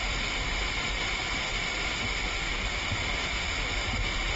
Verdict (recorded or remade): recorded